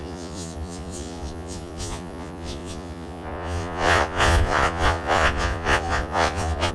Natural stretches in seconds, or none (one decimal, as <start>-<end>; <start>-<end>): none